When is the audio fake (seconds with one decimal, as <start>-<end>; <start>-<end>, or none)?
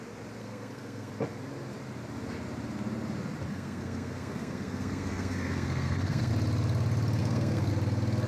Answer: 0.4-1.1; 3.5-6.3; 7.2-7.7